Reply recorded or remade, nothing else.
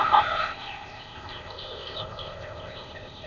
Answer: remade